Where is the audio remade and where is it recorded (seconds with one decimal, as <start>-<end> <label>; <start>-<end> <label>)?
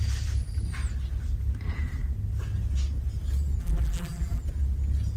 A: 0.0-3.6 recorded; 3.6-4.4 remade; 4.4-5.2 recorded